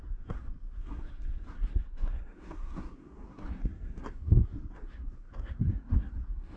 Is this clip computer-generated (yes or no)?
yes